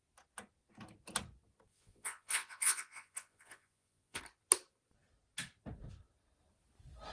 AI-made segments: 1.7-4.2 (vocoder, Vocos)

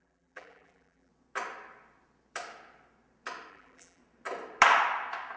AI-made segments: 0.0-1.1 (vocoder, BigVGAN v2); 3.5-4.0

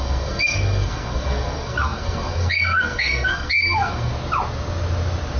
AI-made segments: 0.0-4.1 (codec, SNAC)

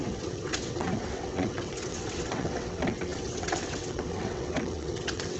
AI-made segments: 0.0-5.4 (vocoder, WaveNeXt)

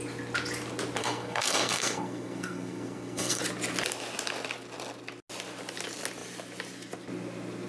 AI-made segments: 1.0-3.4 (codec, SNAC)

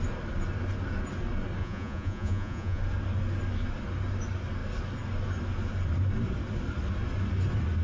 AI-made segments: 1.6-2.8 (vocoder, Vocos)

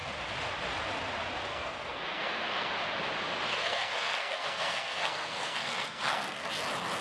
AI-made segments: 1.5-2.7 (codec, SNAC); 3.5-6.5

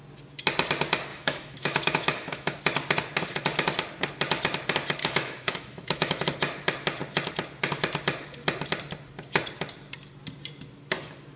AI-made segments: 1.1-2.6 (autoencoder, DAC-VAE); 5.0-6.2